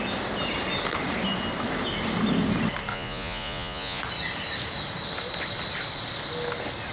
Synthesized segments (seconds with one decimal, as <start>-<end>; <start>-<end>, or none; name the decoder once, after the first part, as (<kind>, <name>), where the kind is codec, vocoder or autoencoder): 2.9-4.0 (vocoder, Vocos)